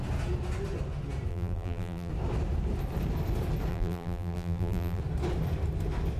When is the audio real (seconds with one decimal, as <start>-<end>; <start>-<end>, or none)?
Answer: 0.0-1.3; 2.1-3.7; 5.0-6.2